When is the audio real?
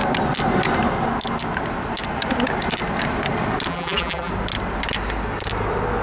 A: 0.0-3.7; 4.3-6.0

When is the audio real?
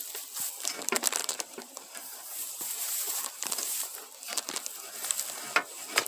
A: 0.0-1.2; 4.1-6.1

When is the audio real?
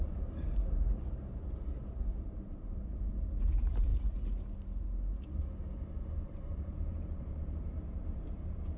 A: 3.9-5.6